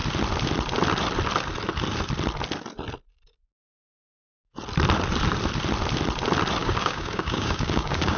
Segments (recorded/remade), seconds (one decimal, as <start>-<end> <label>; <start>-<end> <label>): 0.0-6.6 recorded; 6.6-8.2 remade